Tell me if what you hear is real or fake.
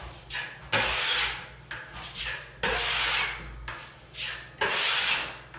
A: real